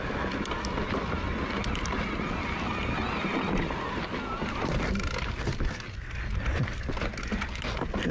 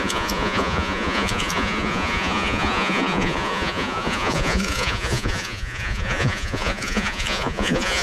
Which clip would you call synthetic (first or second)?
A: second